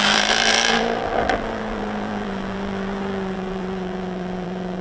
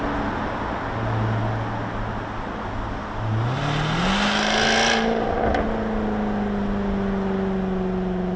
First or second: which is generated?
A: first